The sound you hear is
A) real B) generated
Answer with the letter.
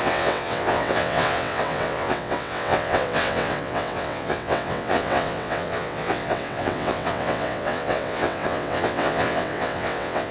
B